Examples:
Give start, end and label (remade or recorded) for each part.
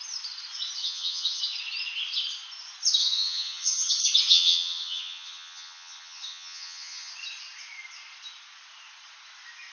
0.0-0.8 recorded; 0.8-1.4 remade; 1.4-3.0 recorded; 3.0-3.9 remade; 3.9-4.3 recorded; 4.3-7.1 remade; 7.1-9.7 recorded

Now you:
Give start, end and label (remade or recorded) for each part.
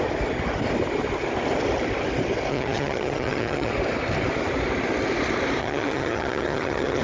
0.0-2.5 recorded; 2.5-3.7 remade; 3.7-5.6 recorded; 5.6-7.0 remade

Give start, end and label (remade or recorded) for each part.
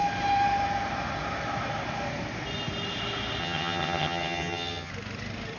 0.0-3.4 recorded; 3.4-4.9 remade; 4.9-5.6 recorded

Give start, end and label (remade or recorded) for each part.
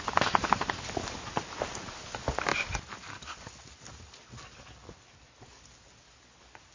0.0-6.7 recorded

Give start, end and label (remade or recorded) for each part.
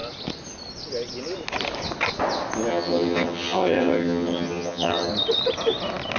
0.0-2.7 recorded; 2.7-5.1 remade; 5.1-6.2 recorded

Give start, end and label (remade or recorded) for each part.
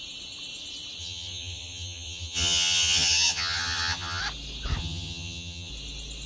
0.0-1.0 recorded; 1.0-4.2 remade; 4.2-4.8 recorded; 4.8-5.7 remade; 5.7-6.3 recorded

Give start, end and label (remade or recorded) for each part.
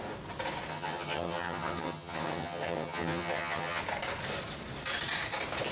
0.0-0.7 recorded; 0.7-3.8 remade; 3.8-5.7 recorded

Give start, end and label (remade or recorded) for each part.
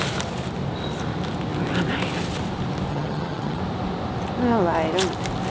0.0-2.9 recorded; 2.9-3.6 remade; 3.6-5.5 recorded